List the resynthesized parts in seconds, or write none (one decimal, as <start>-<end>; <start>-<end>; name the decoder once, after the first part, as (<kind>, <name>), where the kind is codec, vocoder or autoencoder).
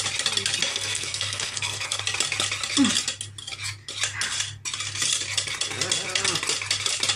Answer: 0.7-2.0 (codec, SNAC)